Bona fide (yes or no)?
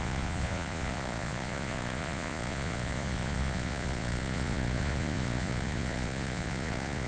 no